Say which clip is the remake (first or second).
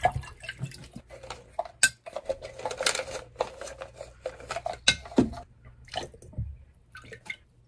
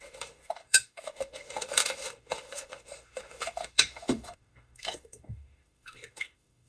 second